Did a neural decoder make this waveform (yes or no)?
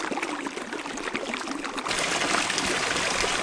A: no